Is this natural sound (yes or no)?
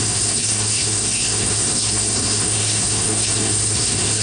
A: no